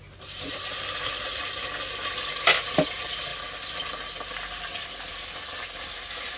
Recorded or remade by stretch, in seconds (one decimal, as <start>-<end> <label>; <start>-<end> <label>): 0.0-6.4 recorded